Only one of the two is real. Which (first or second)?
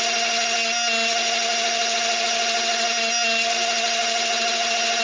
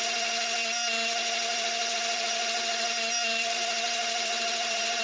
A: first